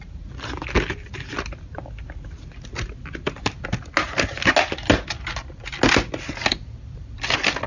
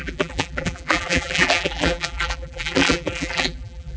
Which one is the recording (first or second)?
first